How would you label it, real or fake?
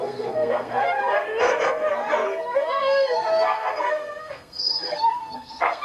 fake